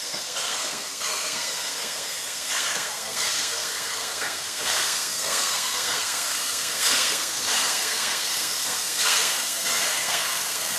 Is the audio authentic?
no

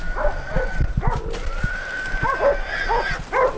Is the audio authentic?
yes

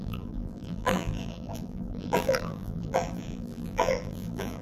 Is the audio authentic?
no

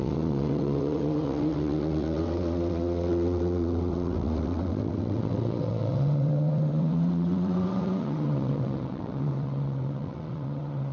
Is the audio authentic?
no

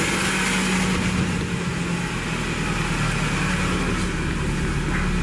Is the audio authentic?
yes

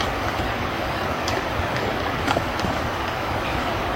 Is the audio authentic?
no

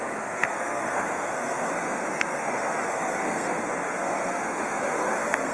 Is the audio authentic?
no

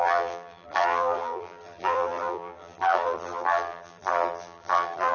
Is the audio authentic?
no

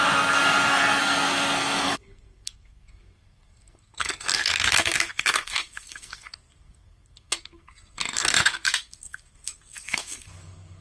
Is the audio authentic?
no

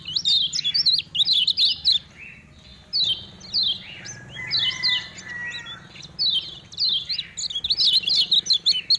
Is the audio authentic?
yes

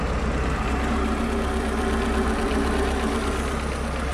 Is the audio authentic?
yes